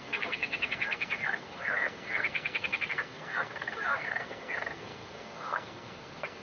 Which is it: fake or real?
fake